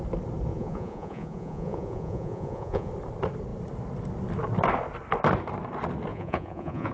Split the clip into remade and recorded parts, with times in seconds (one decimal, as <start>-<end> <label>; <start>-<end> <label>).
0.0-0.5 recorded; 0.5-2.9 remade; 2.9-6.1 recorded; 6.1-6.9 remade